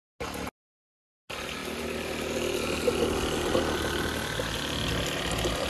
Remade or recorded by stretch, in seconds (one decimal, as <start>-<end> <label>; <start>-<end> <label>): 0.0-5.7 recorded